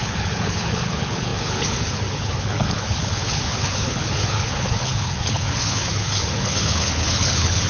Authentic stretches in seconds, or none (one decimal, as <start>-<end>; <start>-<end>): none